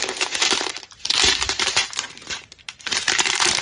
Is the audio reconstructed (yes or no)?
yes